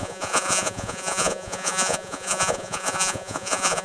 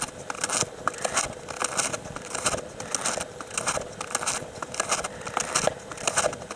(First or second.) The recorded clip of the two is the second